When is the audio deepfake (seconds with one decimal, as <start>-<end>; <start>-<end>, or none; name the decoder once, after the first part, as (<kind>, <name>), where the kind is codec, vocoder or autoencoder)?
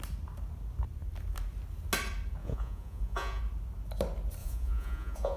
2.4-3.4 (vocoder, Vocos); 4.4-5.4